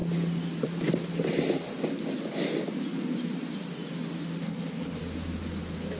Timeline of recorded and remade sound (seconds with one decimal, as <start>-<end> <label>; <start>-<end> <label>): 0.0-4.4 recorded; 4.4-5.0 remade; 5.0-6.0 recorded